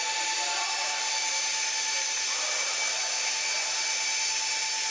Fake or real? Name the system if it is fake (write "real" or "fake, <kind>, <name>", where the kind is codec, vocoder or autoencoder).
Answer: real